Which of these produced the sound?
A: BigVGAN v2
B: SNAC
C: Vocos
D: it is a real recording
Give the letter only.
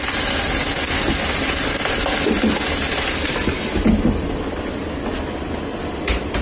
D